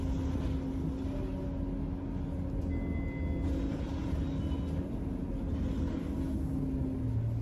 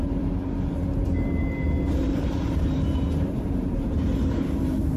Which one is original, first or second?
first